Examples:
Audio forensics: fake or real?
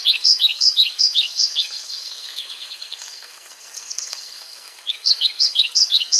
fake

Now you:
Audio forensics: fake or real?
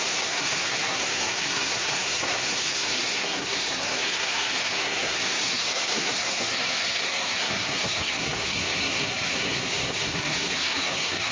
fake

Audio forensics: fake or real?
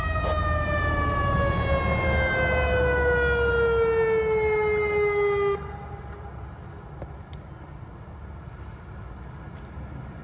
real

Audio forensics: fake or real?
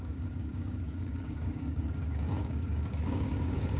fake